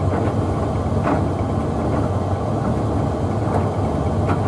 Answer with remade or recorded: recorded